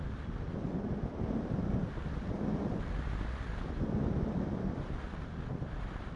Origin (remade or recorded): recorded